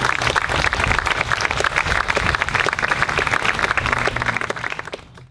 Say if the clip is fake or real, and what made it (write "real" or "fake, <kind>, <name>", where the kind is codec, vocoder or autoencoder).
real